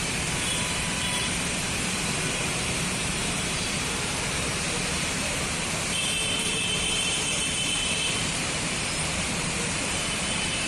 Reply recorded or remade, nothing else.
remade